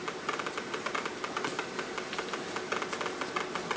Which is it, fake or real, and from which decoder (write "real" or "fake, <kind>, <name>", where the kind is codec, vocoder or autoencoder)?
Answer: real